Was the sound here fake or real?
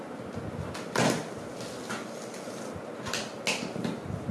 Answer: real